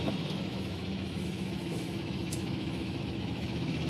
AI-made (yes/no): yes